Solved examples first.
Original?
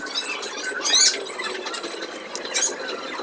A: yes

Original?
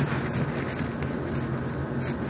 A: yes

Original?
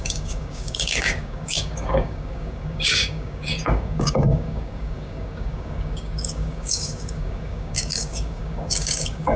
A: no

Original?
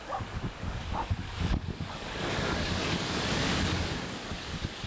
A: no